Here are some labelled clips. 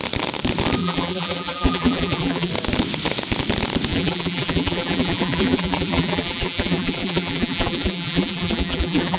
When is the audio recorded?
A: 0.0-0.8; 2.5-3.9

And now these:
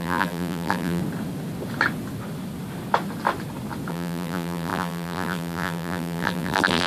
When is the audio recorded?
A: 1.0-3.9

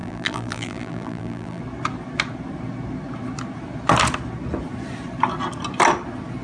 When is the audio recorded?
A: 1.6-6.4

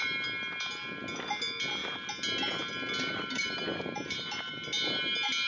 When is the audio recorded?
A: 0.0-3.1; 4.5-5.5

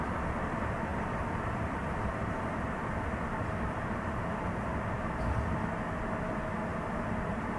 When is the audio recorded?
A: 0.0-0.9; 4.7-6.7

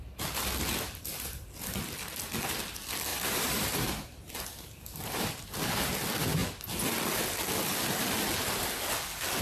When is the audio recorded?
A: 0.0-3.1; 5.3-9.4

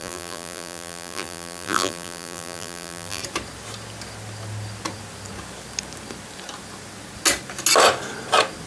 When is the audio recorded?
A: 3.2-8.7

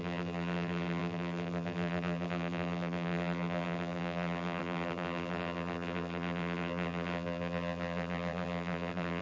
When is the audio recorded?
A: none